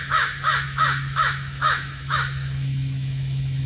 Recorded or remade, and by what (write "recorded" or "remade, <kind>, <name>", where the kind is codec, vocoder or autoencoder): remade, autoencoder, DAC-VAE